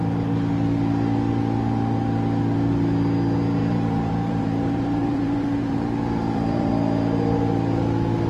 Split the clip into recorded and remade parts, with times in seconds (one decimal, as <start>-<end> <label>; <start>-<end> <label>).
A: 0.0-3.6 recorded; 3.6-6.7 remade; 6.7-8.3 recorded